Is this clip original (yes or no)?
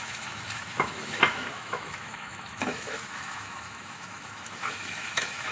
no